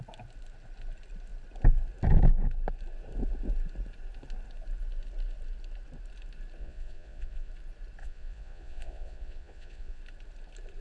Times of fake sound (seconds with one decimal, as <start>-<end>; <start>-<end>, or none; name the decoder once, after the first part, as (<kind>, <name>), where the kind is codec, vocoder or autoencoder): 6.6-7.5 (vocoder, Vocos); 8.0-10.0